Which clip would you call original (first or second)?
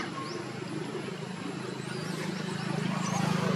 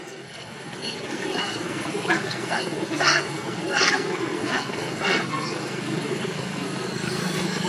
first